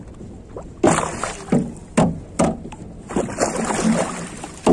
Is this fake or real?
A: real